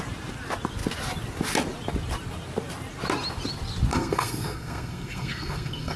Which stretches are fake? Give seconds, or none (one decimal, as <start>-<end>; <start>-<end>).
3.9-6.0